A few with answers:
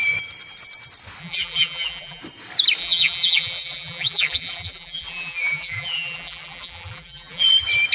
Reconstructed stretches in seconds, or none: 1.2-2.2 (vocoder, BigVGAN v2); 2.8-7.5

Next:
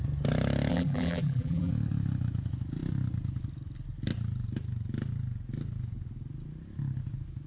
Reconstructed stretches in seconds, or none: 0.7-1.7 (vocoder, BigVGAN v2)

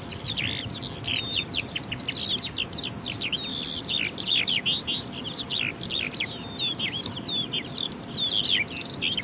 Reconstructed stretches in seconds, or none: 3.5-8.1 (vocoder, BigVGAN v2)

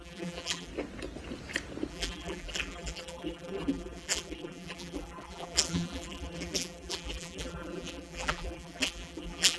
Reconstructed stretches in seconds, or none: 0.0-0.7 (vocoder, BigVGAN v2); 1.9-9.6

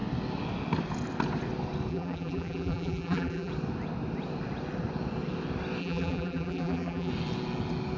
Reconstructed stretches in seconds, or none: 1.9-3.5 (vocoder, BigVGAN v2); 5.8-7.1